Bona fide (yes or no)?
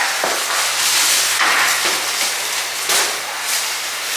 yes